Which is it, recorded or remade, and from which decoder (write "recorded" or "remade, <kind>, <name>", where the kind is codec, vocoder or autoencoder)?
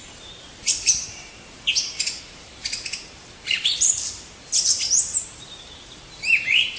remade, vocoder, BigVGAN v2